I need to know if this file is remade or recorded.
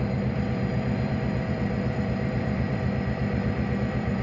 remade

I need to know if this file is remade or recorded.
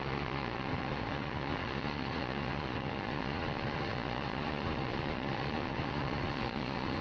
remade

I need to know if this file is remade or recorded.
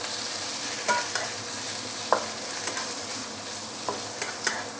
recorded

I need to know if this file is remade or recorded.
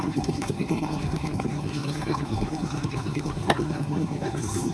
remade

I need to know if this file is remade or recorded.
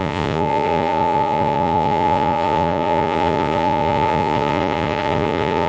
remade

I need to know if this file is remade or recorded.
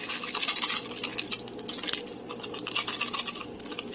recorded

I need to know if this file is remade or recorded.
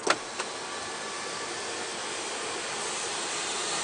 recorded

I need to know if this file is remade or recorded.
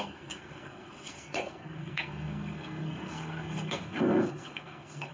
remade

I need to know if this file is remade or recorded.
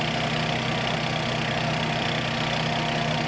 recorded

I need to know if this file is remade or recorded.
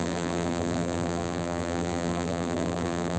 remade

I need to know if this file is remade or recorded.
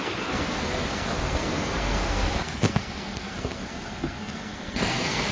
remade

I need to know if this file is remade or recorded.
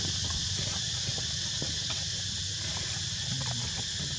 recorded